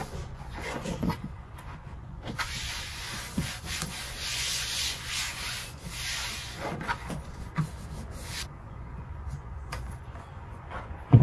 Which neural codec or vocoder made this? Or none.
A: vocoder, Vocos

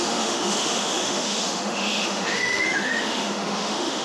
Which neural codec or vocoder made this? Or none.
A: autoencoder, DAC-VAE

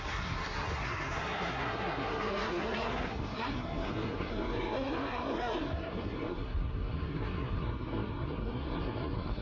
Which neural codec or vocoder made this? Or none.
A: codec, SNAC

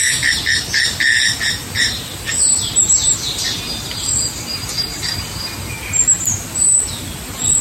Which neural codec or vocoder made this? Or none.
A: none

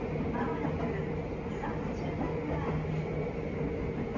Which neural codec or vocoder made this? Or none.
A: none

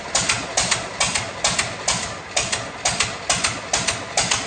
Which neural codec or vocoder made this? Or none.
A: none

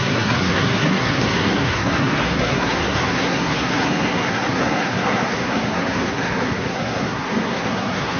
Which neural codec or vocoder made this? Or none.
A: codec, SNAC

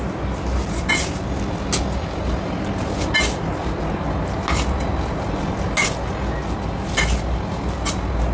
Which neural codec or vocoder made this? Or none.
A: none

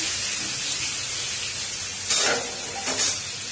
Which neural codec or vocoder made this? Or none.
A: none